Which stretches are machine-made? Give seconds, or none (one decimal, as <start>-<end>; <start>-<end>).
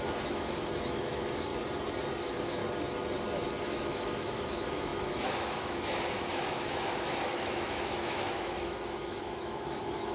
0.0-1.5; 2.2-2.6; 3.6-10.1